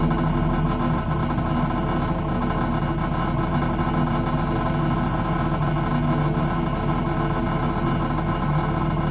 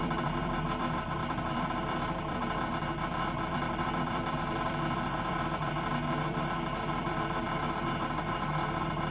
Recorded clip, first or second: first